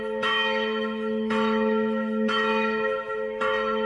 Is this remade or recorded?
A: remade